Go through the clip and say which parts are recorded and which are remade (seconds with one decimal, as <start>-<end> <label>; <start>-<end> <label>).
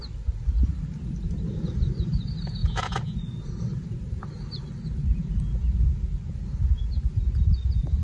0.0-2.6 recorded; 2.6-3.2 remade; 3.2-8.0 recorded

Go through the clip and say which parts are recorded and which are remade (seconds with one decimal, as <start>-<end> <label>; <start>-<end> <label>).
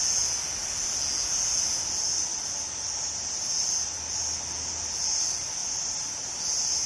0.0-2.3 recorded; 2.3-4.5 remade; 4.5-5.6 recorded; 5.6-6.4 remade; 6.4-6.9 recorded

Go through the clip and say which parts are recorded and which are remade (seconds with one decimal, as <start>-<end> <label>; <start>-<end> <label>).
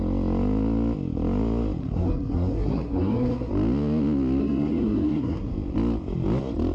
0.0-1.8 recorded; 1.8-3.5 remade; 3.5-4.4 recorded; 4.4-5.5 remade; 5.5-6.7 recorded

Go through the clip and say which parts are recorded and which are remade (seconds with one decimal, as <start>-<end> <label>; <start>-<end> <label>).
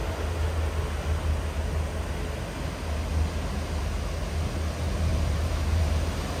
0.0-5.1 recorded; 5.1-6.0 remade; 6.0-6.4 recorded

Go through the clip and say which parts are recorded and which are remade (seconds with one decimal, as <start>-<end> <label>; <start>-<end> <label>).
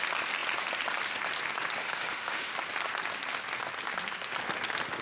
0.0-1.8 recorded; 1.8-2.5 remade; 2.5-5.0 recorded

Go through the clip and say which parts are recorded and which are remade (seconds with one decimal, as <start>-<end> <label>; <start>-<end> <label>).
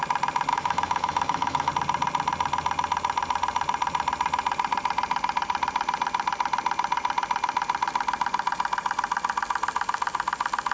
0.0-0.5 recorded; 0.5-1.7 remade; 1.7-10.7 recorded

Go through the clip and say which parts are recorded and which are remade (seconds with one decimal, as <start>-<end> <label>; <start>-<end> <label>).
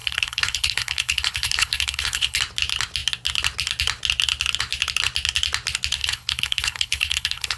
0.0-2.4 remade; 2.4-6.0 recorded; 6.0-7.6 remade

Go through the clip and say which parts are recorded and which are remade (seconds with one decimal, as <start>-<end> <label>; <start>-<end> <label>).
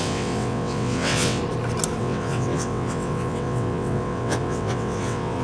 0.0-1.4 remade; 1.4-2.0 recorded; 2.0-5.4 remade